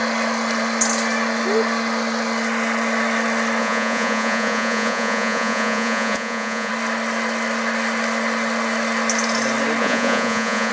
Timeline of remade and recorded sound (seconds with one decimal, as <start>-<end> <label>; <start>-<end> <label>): 0.0-3.6 recorded; 3.6-6.7 remade; 6.7-9.8 recorded; 9.8-10.7 remade